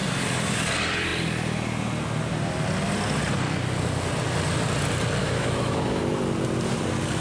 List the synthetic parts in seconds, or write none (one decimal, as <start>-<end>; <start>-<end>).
5.2-6.0